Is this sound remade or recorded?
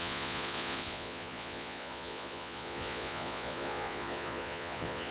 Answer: remade